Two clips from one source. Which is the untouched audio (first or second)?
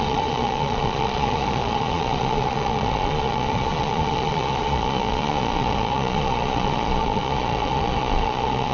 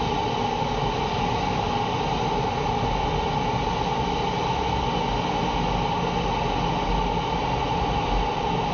second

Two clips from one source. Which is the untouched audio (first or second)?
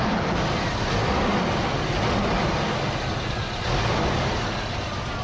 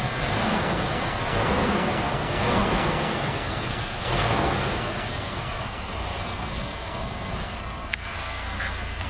first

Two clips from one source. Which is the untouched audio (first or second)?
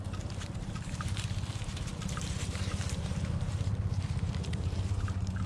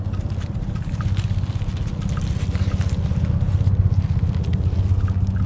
second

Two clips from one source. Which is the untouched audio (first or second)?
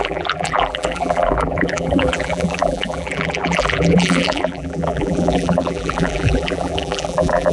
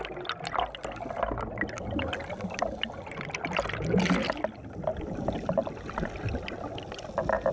second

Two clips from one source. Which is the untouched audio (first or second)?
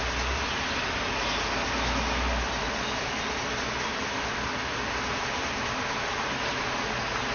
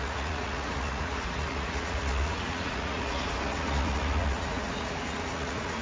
first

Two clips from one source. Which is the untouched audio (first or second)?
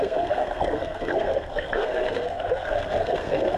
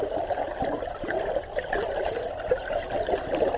second